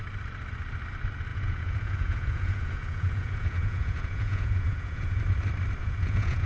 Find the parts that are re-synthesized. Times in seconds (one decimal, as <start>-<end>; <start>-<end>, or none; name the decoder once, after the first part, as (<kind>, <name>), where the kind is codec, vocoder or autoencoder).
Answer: 1.3-5.2 (vocoder, Vocos); 5.8-6.5